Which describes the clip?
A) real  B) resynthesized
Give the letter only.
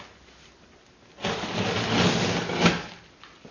A